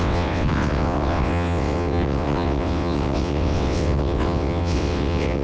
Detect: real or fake fake